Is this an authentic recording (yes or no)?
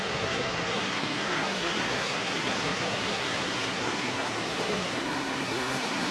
no